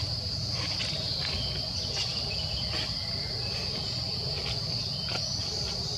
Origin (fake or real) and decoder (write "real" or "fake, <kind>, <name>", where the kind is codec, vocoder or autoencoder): real